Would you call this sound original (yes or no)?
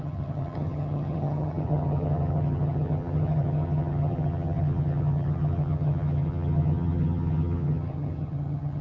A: no